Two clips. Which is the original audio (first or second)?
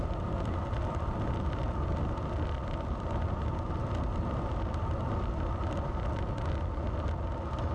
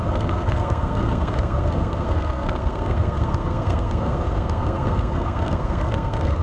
first